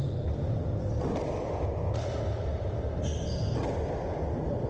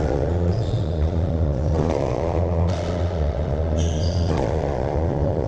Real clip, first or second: first